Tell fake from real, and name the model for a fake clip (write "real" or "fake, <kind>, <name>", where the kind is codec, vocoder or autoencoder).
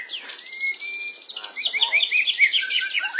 real